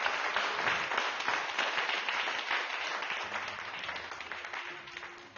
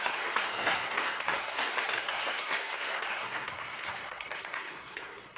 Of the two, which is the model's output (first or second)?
second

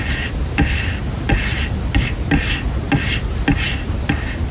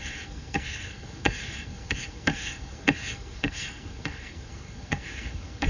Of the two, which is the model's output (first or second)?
second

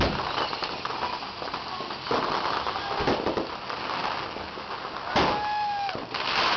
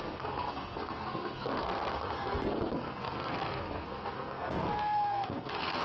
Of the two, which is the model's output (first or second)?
second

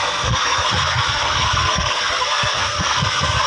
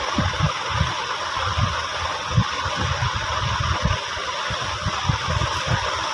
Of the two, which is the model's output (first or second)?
first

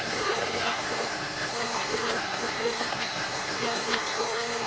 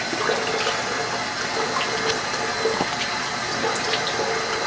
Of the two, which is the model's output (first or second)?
first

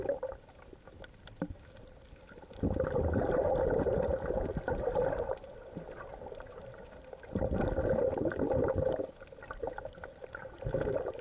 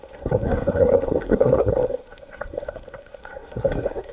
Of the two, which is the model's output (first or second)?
second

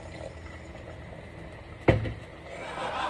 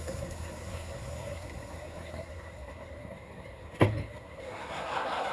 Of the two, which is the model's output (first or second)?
second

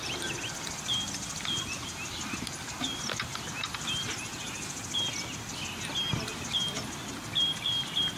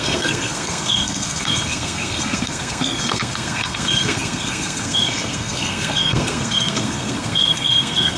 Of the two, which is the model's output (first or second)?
second